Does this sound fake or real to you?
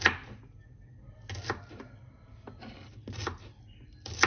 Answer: real